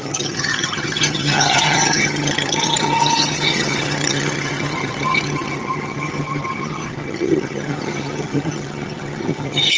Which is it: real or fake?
fake